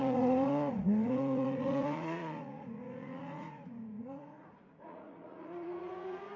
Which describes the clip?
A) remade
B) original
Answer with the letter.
A